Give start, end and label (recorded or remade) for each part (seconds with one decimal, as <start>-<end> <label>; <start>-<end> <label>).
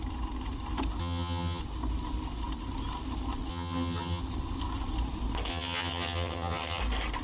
0.0-1.0 recorded; 1.0-1.6 remade; 1.6-3.5 recorded; 3.5-4.2 remade; 4.2-5.5 recorded; 5.5-6.8 remade; 6.8-7.2 recorded